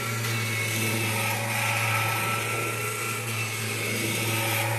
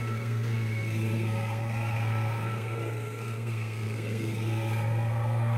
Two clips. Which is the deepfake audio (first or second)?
second